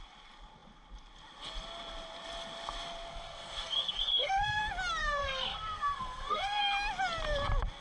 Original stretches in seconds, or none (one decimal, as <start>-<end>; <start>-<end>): 0.0-3.1; 4.6-5.0; 6.6-7.8